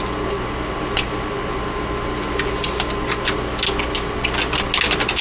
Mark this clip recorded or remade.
recorded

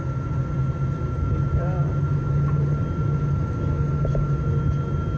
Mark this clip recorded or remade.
recorded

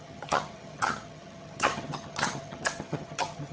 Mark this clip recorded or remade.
remade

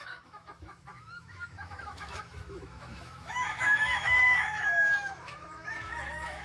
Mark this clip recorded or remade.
remade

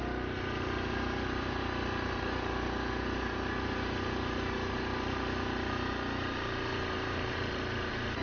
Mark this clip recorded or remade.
recorded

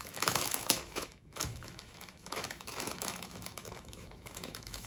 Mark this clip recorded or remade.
remade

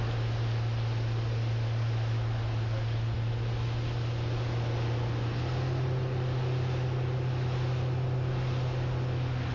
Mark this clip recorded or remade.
recorded